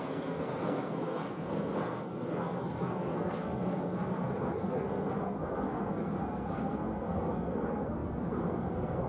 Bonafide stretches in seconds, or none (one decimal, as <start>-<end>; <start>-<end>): none